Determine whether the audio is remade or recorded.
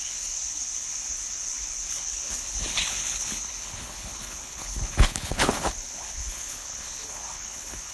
remade